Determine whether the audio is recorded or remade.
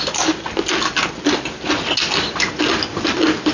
recorded